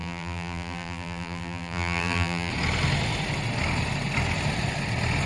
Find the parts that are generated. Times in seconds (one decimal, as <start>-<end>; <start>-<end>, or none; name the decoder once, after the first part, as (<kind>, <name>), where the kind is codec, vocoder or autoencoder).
0.0-2.5 (vocoder, BigVGAN v2)